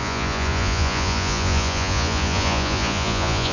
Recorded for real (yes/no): no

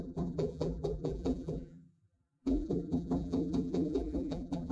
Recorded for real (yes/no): no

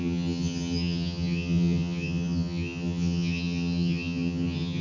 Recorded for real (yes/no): no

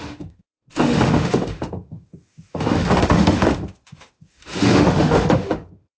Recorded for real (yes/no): no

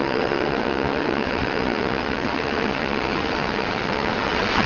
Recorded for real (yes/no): no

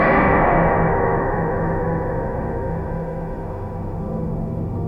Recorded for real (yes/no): no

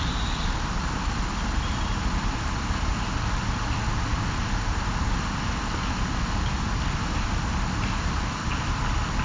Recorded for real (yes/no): yes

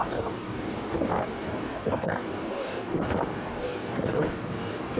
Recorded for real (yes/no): no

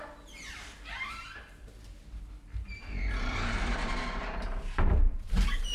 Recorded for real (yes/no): no